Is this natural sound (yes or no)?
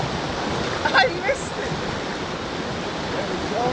yes